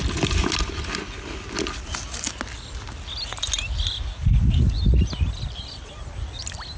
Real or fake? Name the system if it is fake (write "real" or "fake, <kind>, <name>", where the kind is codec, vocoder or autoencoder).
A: real